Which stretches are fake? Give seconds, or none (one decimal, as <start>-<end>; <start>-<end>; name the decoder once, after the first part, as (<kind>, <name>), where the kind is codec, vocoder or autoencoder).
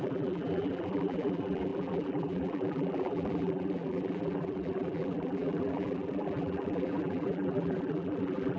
0.0-8.6 (vocoder, BigVGAN v2)